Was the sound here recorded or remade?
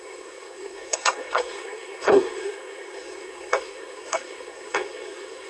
remade